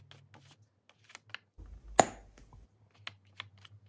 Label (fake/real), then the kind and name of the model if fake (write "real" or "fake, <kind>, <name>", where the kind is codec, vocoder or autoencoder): real